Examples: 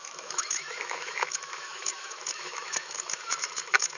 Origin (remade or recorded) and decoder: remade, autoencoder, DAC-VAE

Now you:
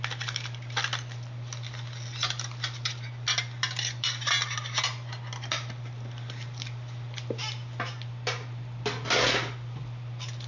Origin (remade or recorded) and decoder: recorded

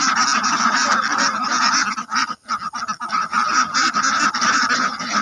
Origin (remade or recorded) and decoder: recorded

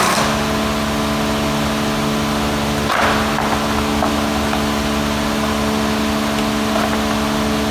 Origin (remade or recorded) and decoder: recorded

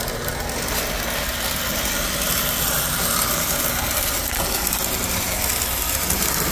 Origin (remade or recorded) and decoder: recorded